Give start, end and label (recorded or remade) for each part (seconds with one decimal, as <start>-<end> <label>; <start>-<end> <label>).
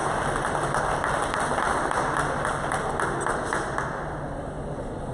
0.0-5.1 recorded